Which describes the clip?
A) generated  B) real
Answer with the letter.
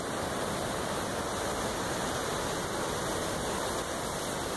B